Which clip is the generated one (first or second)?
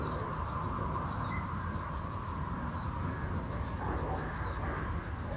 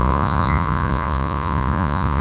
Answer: second